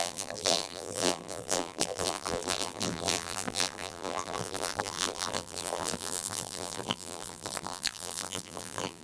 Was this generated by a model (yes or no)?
yes